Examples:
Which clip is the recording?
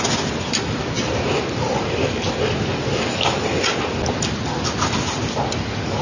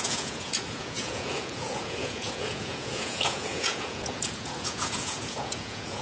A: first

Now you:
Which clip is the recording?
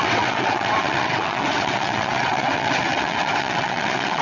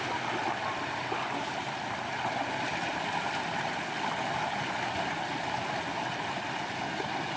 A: second